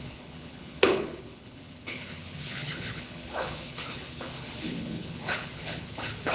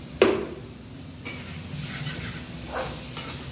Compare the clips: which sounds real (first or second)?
second